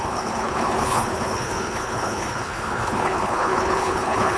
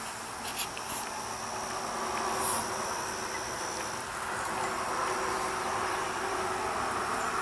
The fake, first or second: first